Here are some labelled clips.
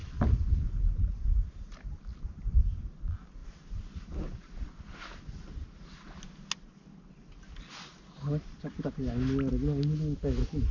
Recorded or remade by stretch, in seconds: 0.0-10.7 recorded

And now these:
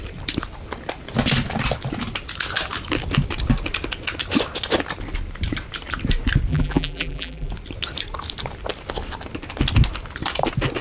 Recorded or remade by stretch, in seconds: 0.0-6.5 recorded; 6.5-7.5 remade; 7.5-10.8 recorded

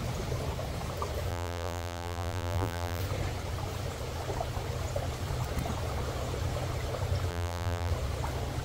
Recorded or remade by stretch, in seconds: 0.0-1.3 recorded; 1.3-3.0 remade; 3.0-7.3 recorded; 7.3-7.9 remade; 7.9-8.6 recorded

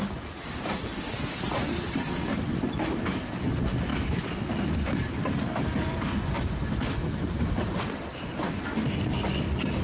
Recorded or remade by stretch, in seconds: 0.0-3.9 recorded; 3.9-6.3 remade; 6.3-9.8 recorded

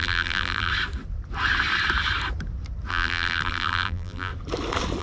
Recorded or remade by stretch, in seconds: 0.0-0.7 remade; 0.7-2.9 recorded; 2.9-4.3 remade; 4.3-5.0 recorded

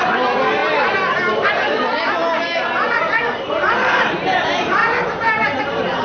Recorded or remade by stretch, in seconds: 0.0-0.6 remade; 0.6-1.3 recorded; 1.3-2.2 remade; 2.2-3.4 recorded; 3.4-4.8 remade; 4.8-5.6 recorded; 5.6-6.0 remade

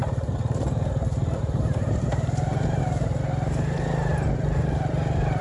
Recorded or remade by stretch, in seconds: 0.0-4.1 remade; 4.1-4.9 recorded; 4.9-5.4 remade